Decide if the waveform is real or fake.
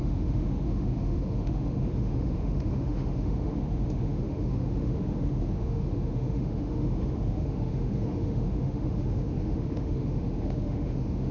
fake